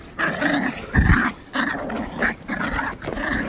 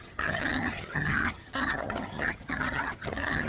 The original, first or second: first